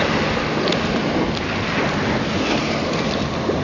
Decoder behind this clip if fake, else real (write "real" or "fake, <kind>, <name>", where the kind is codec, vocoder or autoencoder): real